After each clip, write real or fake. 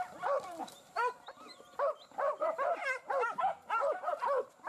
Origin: real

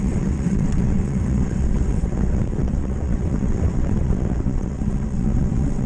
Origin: fake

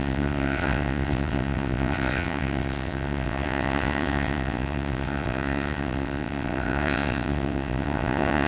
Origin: fake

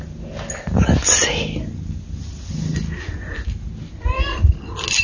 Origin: real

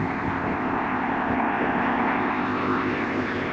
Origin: fake